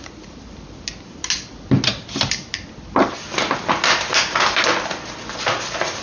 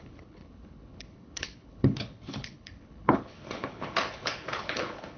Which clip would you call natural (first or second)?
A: first